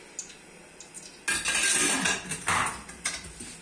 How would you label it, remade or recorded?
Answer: recorded